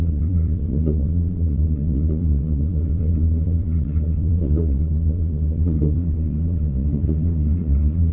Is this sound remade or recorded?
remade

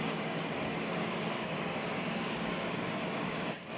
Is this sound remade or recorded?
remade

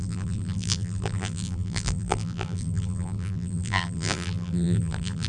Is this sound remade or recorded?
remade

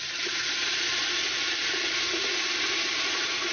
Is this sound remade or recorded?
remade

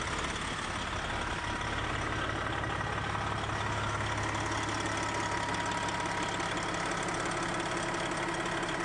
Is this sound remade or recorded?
recorded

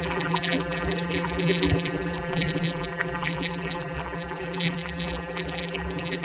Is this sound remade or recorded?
remade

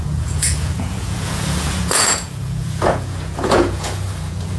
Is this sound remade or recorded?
remade